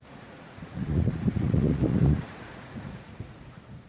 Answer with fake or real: fake